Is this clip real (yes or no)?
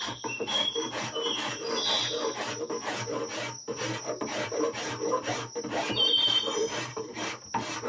no